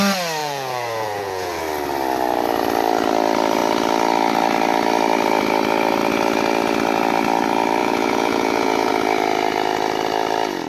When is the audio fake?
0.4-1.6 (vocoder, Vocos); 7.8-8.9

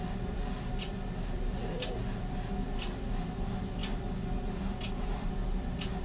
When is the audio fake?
none

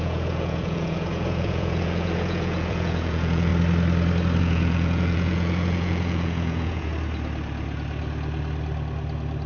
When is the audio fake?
0.0-3.5 (vocoder, Vocos); 4.4-6.9